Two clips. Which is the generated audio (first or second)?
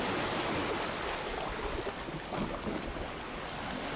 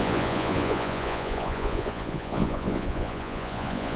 second